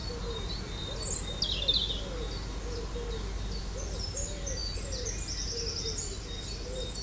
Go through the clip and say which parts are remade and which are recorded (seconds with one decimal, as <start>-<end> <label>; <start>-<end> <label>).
0.0-7.0 recorded